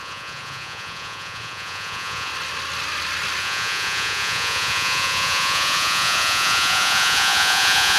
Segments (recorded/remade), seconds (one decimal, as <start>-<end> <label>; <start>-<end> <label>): 0.0-2.3 remade; 2.3-3.4 recorded; 3.4-8.0 remade